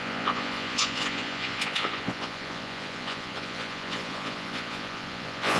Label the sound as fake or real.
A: fake